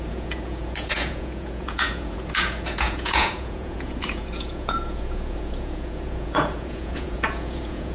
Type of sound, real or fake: fake